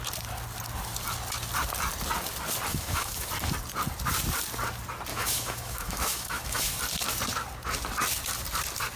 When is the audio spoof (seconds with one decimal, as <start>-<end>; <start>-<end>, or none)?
2.7-3.3; 5.1-6.8